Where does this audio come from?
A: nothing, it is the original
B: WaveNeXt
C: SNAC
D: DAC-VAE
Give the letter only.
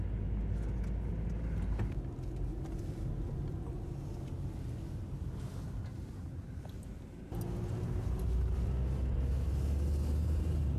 A